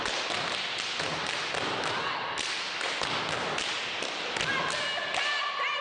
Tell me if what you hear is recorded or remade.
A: recorded